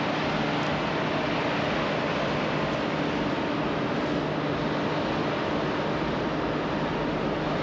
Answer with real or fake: real